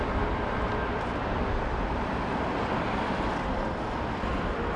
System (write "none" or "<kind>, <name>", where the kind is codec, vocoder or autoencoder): vocoder, BigVGAN v2